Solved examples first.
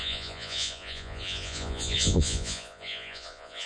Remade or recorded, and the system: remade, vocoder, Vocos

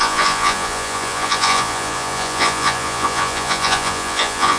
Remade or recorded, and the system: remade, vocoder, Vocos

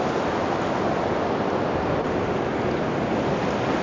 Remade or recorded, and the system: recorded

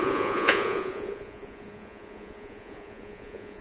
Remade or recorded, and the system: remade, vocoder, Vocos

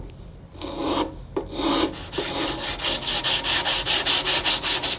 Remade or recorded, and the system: recorded